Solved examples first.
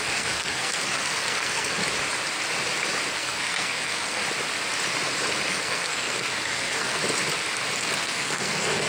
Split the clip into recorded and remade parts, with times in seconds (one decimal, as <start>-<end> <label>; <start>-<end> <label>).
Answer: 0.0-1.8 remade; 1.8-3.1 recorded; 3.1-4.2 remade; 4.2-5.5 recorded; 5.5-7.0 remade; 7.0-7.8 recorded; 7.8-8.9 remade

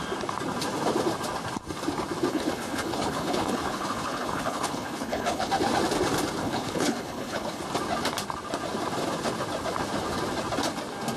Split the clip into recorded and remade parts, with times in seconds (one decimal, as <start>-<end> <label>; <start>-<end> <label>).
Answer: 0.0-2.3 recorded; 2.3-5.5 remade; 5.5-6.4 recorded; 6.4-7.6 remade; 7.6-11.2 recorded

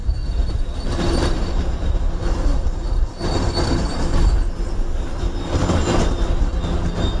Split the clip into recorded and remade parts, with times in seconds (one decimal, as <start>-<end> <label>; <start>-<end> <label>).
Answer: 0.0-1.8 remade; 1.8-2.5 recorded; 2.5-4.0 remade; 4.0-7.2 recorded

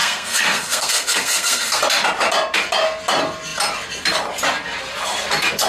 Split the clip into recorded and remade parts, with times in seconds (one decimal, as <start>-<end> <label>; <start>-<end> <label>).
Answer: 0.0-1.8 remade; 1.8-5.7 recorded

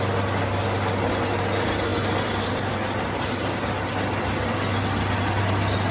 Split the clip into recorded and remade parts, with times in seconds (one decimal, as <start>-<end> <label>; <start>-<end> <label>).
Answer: 0.0-5.9 recorded

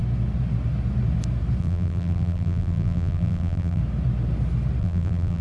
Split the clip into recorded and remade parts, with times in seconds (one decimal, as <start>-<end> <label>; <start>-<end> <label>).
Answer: 0.0-1.6 recorded; 1.6-3.8 remade; 3.8-4.8 recorded; 4.8-5.4 remade

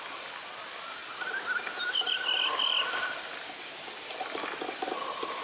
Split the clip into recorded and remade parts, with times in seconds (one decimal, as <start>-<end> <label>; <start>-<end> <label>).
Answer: 0.0-5.4 recorded

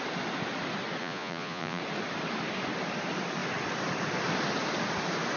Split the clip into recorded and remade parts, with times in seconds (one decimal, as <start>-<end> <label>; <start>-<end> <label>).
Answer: 0.0-1.0 recorded; 1.0-1.8 remade; 1.8-5.4 recorded